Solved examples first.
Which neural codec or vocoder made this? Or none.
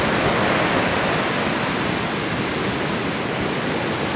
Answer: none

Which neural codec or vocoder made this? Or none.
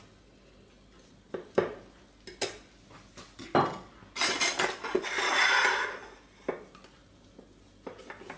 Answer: none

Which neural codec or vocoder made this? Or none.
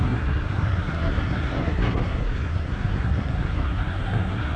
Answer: codec, SNAC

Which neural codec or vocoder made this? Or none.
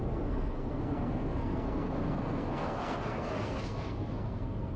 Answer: codec, SNAC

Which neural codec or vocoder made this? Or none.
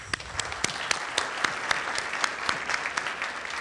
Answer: none